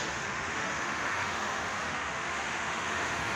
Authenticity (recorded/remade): remade